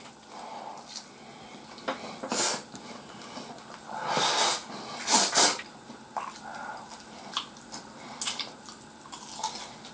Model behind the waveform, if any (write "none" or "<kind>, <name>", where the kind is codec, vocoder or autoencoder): none